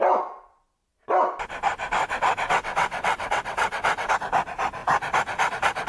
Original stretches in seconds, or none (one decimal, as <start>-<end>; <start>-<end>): 0.0-2.0; 4.1-5.9